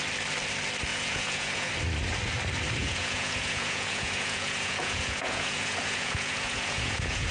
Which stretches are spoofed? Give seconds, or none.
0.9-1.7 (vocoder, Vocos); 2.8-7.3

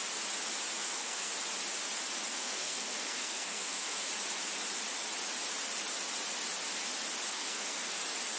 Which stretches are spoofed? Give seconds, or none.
0.8-1.3 (codec, SNAC); 2.3-4.1; 7.3-8.0

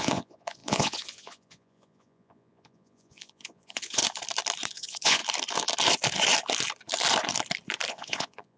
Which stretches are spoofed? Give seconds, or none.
0.0-4.0 (vocoder, Vocos); 4.7-5.2; 7.9-8.6

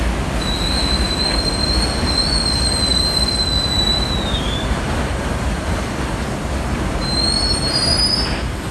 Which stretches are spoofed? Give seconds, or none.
2.9-6.9 (vocoder, BigVGAN v2)

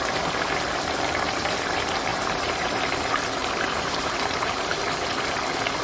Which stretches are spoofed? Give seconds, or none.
2.1-2.8 (vocoder, BigVGAN v2); 3.4-4.8

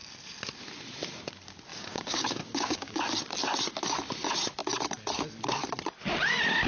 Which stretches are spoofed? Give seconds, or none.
1.7-3.0 (codec, DAC)

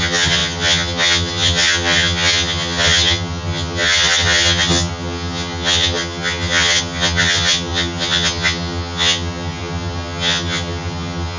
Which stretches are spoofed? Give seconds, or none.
0.0-11.4 (vocoder, HiFi-GAN)